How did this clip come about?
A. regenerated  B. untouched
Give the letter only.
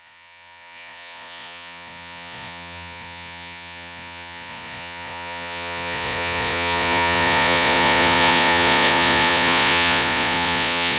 A